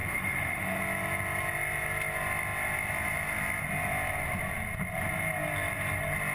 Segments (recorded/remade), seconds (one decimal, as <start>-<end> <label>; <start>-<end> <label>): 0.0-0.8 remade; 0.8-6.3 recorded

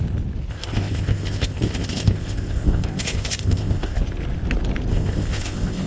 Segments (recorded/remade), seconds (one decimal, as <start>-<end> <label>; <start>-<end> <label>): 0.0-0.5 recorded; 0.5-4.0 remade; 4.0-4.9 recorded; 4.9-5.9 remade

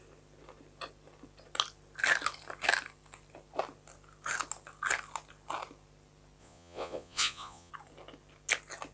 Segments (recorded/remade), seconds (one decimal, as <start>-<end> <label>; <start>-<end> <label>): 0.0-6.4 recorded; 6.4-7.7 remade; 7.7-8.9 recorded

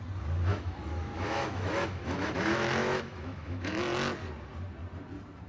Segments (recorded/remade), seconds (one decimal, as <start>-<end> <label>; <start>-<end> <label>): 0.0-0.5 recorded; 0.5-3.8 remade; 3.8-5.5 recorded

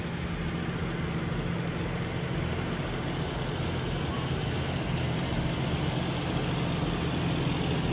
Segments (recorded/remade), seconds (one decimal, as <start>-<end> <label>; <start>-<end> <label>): 0.0-2.3 recorded; 2.3-3.3 remade; 3.3-4.1 recorded; 4.1-6.3 remade; 6.3-7.9 recorded